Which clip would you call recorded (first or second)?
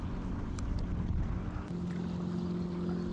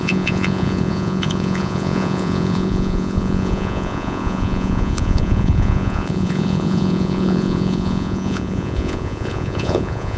first